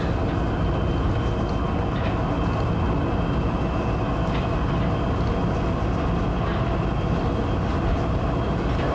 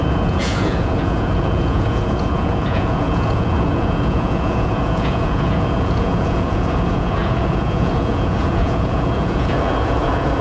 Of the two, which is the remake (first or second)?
second